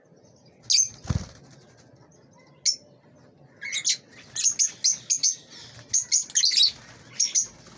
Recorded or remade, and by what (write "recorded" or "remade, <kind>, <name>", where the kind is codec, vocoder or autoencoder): recorded